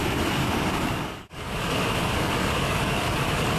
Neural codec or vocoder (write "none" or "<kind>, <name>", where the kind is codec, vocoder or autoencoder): codec, DAC